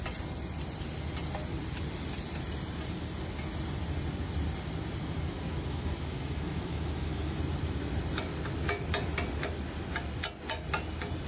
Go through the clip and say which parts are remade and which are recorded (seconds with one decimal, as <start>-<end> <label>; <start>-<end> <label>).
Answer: 0.0-5.0 recorded; 5.0-7.4 remade; 7.4-11.3 recorded